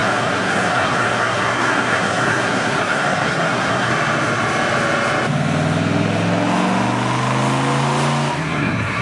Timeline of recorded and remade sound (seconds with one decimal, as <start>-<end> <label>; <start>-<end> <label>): 0.0-3.9 remade; 3.9-8.4 recorded; 8.4-9.0 remade